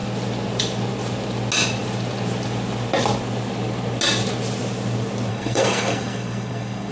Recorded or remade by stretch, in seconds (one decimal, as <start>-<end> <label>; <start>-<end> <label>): 0.0-5.3 recorded; 5.3-6.9 remade